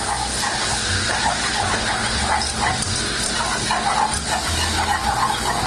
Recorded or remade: recorded